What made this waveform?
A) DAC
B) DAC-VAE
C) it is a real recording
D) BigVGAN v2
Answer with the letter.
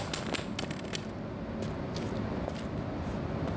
C